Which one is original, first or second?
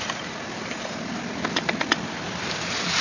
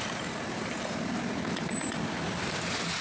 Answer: second